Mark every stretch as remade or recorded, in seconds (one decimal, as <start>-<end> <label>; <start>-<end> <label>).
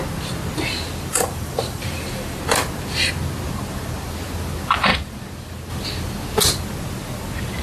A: 0.0-1.1 recorded; 1.1-2.4 remade; 2.4-7.6 recorded